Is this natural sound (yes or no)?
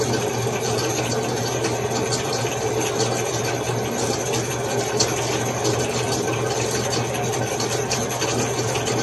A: yes